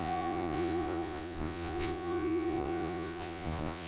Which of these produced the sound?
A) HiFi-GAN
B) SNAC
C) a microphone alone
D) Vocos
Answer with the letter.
D